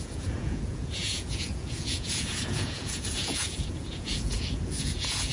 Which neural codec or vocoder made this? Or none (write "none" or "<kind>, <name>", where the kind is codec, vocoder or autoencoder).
vocoder, Vocos